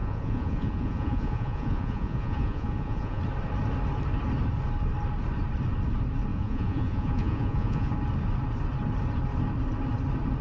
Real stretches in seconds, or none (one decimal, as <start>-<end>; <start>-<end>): 3.2-6.3; 7.9-10.4

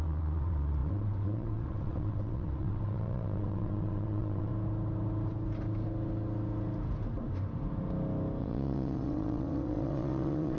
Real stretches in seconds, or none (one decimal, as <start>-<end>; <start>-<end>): 4.5-8.4

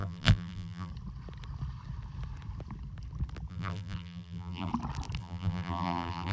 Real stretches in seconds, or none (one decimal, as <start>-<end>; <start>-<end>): 0.9-3.5; 4.7-5.2

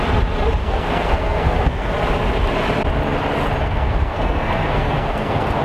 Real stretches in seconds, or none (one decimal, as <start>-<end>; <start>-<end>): 0.0-0.6; 1.9-3.6

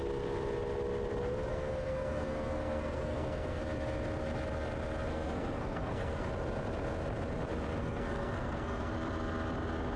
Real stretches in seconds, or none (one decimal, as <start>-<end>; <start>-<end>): 0.0-1.5; 3.6-5.1; 6.3-7.8; 8.9-10.0